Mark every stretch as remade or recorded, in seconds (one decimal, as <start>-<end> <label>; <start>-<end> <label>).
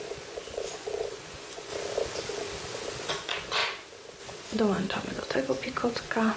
0.0-1.7 remade; 1.7-3.1 recorded; 3.1-3.6 remade; 3.6-4.2 recorded; 4.2-6.4 remade